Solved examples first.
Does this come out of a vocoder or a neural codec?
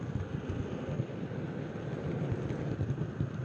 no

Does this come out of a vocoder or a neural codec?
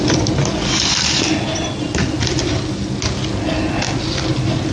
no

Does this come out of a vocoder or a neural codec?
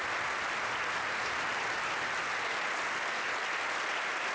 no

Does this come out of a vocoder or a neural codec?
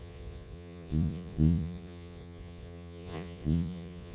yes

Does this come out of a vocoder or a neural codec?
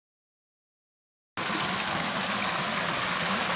no